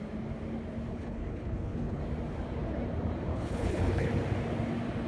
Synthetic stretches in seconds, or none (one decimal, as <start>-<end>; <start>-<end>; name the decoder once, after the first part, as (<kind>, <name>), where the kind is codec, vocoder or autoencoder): 0.9-2.0 (codec, HILCodec); 3.3-4.1